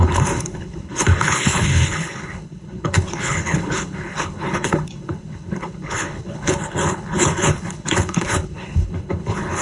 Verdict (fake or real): fake